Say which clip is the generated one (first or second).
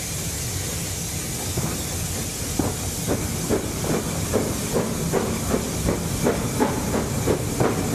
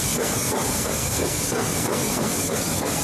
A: second